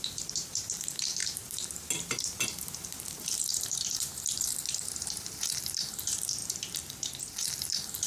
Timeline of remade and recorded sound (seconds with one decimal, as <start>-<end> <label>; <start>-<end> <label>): 0.0-8.1 remade